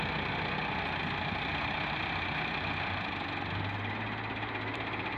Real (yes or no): yes